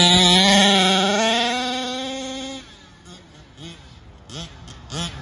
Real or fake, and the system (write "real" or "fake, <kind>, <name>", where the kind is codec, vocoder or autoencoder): real